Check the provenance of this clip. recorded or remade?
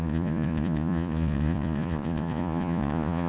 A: remade